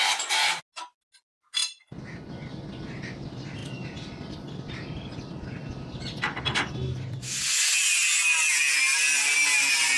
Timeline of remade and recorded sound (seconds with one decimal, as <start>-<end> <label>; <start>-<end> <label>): 0.0-10.0 recorded